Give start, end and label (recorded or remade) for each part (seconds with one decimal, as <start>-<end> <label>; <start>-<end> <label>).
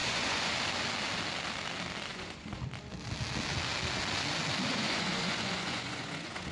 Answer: 0.0-0.5 remade; 0.5-2.1 recorded; 2.1-2.6 remade; 2.6-4.7 recorded; 4.7-6.5 remade